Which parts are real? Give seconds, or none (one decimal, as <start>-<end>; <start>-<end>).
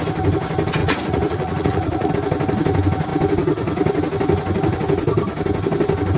0.0-0.8; 2.1-6.2